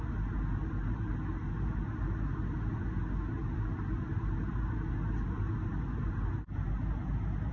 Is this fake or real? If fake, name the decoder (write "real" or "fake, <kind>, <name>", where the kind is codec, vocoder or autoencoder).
real